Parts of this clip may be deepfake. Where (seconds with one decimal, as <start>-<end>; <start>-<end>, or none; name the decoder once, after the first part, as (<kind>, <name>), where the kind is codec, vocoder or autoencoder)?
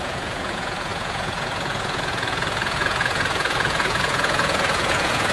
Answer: 0.0-5.3 (vocoder, Vocos)